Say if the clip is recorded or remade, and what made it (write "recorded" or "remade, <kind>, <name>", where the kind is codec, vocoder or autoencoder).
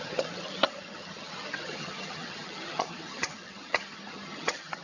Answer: remade, vocoder, HiFi-GAN